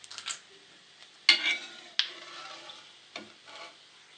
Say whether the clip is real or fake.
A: real